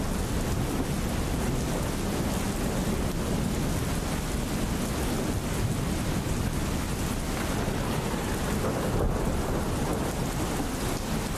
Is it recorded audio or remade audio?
recorded